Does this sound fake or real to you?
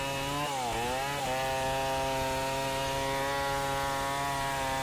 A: real